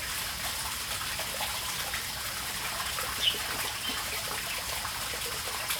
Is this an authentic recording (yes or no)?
yes